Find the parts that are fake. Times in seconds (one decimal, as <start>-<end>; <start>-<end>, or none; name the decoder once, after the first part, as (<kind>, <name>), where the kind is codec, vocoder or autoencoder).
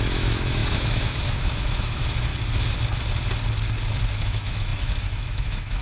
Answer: 0.0-2.3 (autoencoder, DAC-VAE); 4.2-5.8